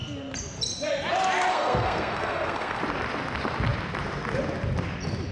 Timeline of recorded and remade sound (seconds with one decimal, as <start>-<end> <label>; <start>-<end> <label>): 0.0-1.5 recorded; 1.5-2.8 remade; 2.8-5.3 recorded